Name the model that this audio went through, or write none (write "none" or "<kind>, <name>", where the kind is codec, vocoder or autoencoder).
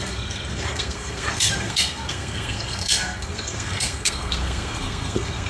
codec, SNAC